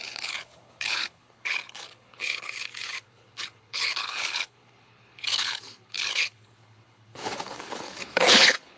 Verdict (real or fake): fake